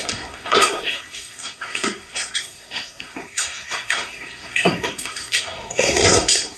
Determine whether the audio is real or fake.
fake